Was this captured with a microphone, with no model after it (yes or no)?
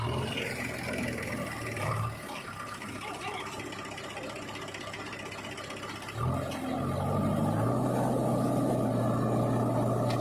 yes